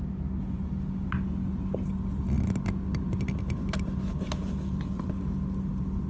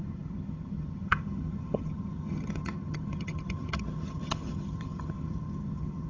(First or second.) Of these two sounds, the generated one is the second